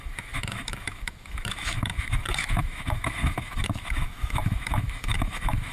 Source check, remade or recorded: remade